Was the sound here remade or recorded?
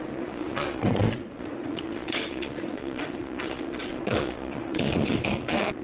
remade